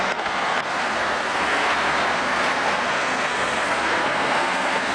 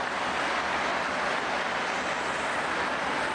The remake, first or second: first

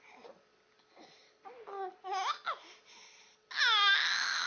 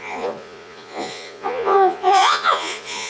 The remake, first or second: second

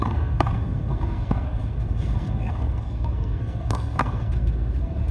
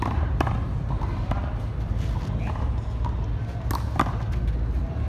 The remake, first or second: first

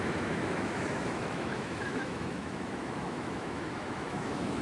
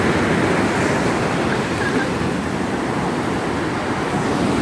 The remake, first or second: first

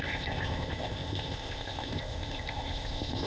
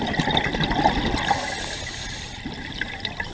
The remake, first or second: first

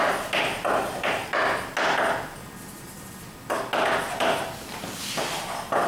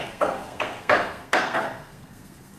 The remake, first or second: second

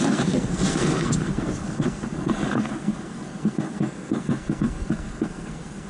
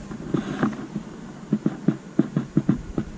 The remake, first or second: first